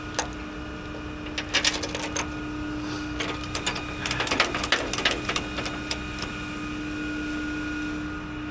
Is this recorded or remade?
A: recorded